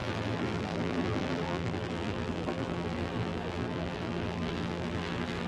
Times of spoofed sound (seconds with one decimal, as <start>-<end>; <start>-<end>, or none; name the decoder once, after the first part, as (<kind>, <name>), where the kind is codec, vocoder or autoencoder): 0.0-5.5 (vocoder, BigVGAN v2)